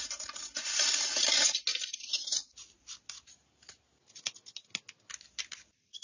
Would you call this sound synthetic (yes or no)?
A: no